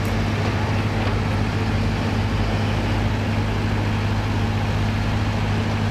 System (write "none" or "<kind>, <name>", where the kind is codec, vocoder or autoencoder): none